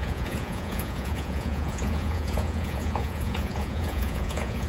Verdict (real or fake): fake